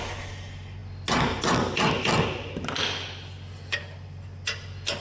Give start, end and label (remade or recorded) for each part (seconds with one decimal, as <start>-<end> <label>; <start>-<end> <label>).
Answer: 0.0-5.0 recorded

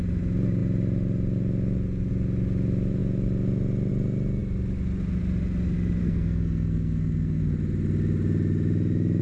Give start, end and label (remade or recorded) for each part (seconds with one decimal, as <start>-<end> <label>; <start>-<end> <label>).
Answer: 0.0-6.0 recorded; 6.0-7.4 remade; 7.4-9.2 recorded

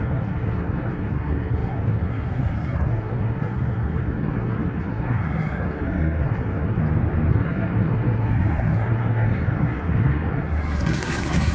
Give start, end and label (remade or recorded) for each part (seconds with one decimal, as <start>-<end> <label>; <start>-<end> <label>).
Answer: 0.0-6.8 remade; 6.8-7.3 recorded; 7.3-11.5 remade

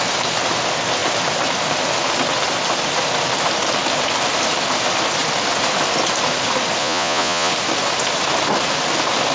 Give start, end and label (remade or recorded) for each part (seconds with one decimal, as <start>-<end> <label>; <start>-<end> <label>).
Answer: 0.0-6.8 recorded; 6.8-7.5 remade; 7.5-9.3 recorded

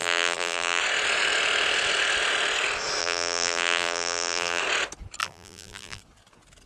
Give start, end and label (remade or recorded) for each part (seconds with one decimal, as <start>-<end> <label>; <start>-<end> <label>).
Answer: 0.0-0.8 remade; 0.8-3.0 recorded; 3.0-4.6 remade; 4.6-5.2 recorded; 5.2-6.0 remade; 6.0-6.7 recorded

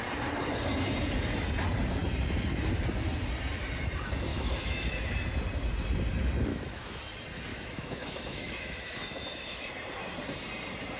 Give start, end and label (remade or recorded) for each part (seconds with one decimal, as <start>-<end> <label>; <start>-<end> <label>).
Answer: 0.0-4.3 recorded; 4.3-5.1 remade; 5.1-6.5 recorded; 6.5-7.0 remade; 7.0-7.5 recorded; 7.5-9.7 remade; 9.7-11.0 recorded

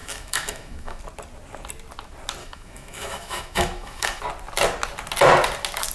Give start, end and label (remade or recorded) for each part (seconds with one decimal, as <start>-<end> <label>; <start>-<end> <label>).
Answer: 0.0-1.0 remade; 1.0-2.4 recorded; 2.4-4.2 remade; 4.2-5.9 recorded

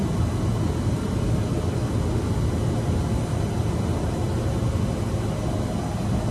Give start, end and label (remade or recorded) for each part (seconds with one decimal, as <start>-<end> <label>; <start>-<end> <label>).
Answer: 0.0-6.3 recorded